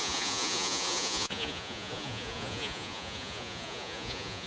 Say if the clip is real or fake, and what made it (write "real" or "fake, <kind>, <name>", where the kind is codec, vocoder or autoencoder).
fake, vocoder, Vocos